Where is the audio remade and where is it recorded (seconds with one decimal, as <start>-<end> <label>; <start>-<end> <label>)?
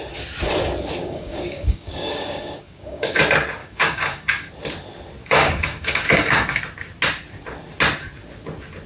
0.0-1.0 recorded; 1.0-3.2 remade; 3.2-3.6 recorded; 3.6-4.5 remade; 4.5-5.2 recorded; 5.2-6.6 remade; 6.6-8.9 recorded